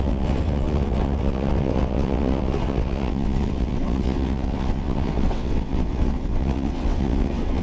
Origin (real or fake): fake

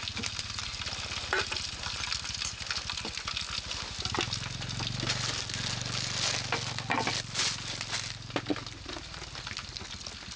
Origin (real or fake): real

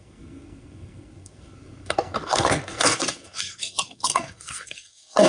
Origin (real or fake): fake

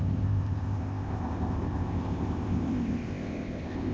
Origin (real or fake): fake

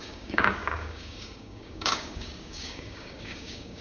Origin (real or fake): fake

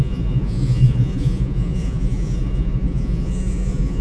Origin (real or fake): fake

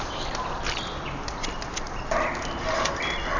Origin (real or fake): real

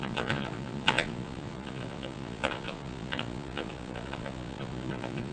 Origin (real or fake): fake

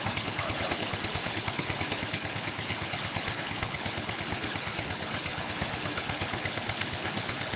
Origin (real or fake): fake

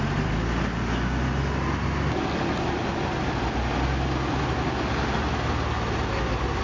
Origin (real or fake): real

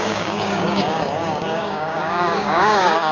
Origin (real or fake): fake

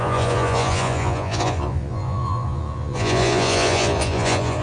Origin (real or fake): fake